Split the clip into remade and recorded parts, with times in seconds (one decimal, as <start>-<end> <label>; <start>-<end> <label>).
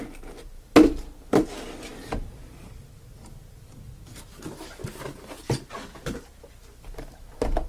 0.0-7.7 recorded